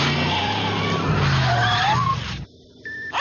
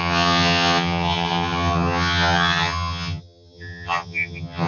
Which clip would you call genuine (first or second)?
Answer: first